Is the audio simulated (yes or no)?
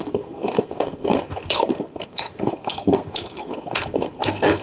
yes